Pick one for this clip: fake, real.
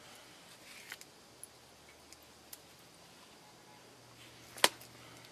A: real